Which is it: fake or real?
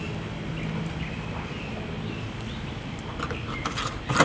real